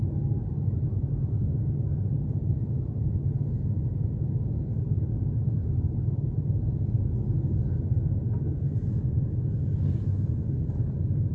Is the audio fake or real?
real